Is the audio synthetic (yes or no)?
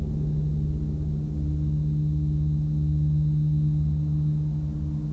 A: no